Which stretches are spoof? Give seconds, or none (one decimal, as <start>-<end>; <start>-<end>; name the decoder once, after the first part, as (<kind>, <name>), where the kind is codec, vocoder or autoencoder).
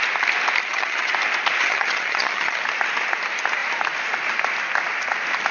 0.6-1.1 (vocoder, HiFi-GAN); 1.6-2.6